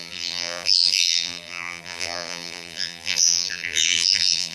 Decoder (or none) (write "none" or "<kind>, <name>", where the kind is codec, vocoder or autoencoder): vocoder, BigVGAN v2